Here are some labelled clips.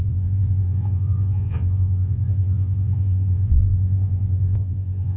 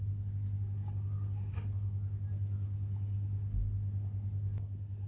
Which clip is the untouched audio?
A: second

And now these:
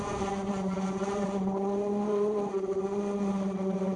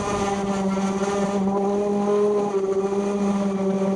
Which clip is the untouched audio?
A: second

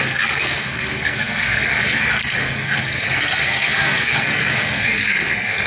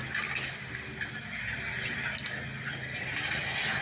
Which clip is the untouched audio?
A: second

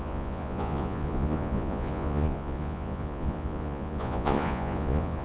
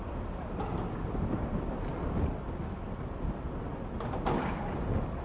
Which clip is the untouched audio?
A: second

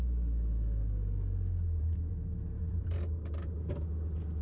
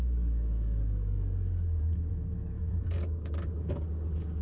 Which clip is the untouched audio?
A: first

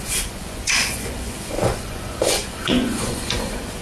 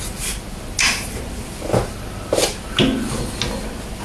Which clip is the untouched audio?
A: second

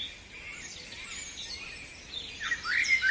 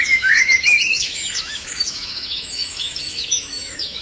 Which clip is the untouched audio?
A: first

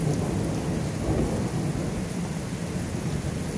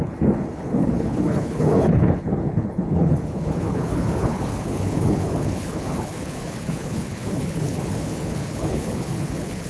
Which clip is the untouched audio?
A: first